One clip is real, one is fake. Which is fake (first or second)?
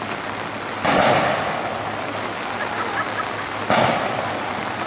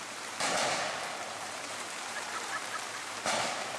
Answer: second